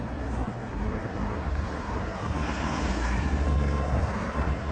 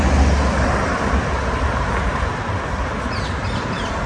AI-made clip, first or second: first